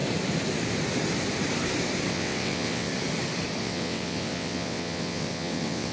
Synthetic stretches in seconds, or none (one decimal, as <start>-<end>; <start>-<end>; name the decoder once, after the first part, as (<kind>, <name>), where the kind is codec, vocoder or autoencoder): 2.1-2.9 (vocoder, WaveNeXt); 3.6-5.9